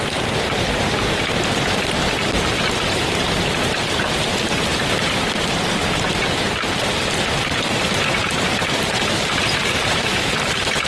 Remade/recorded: remade